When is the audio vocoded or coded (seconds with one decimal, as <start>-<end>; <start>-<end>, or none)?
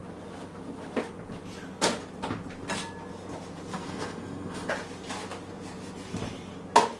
3.7-4.7